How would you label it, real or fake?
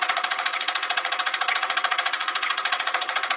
fake